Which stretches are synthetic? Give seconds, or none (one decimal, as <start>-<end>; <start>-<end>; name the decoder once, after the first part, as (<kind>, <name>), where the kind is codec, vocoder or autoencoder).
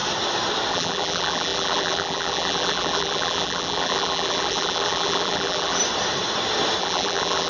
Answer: 0.7-5.8 (vocoder, BigVGAN v2); 6.8-7.5